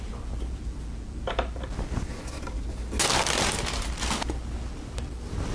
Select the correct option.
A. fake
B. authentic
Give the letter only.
B